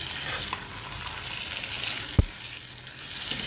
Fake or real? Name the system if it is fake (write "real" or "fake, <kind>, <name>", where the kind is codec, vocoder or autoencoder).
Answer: real